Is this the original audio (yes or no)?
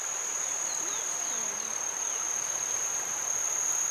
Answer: yes